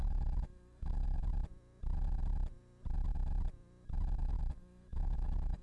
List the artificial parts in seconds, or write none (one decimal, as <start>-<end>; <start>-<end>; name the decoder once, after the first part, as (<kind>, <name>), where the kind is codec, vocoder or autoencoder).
0.0-1.2 (codec, DAC); 4.2-5.6

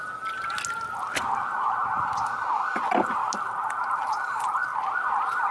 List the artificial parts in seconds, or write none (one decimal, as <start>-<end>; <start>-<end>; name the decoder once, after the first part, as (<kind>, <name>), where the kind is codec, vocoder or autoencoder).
none

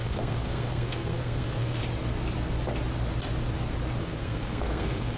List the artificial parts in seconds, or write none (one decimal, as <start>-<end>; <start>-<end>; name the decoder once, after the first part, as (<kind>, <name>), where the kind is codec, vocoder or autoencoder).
0.0-1.8 (codec, SNAC); 4.0-5.2

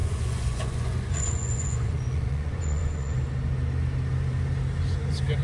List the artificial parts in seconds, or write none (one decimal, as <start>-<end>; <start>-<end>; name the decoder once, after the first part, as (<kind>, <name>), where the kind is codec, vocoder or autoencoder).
0.0-3.2 (vocoder, Vocos)

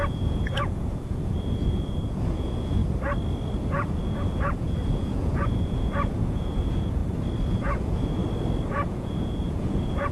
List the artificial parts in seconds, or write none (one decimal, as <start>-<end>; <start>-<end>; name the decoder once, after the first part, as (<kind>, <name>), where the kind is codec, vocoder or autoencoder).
0.0-2.8 (vocoder, Vocos); 3.7-7.0; 7.5-8.2; 8.7-10.1

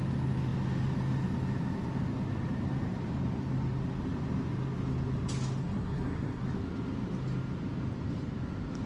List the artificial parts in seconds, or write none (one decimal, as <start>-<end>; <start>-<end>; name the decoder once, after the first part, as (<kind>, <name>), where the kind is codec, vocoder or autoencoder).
5.6-6.4 (codec, SNAC)